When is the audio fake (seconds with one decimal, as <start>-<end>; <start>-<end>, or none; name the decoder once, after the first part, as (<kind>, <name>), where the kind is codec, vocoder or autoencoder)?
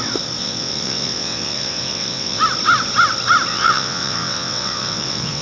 0.4-2.4 (vocoder, WaveNeXt); 3.5-5.4